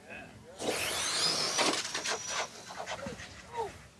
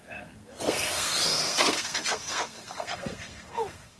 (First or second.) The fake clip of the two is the second